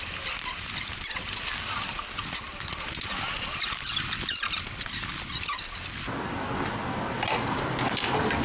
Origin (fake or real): real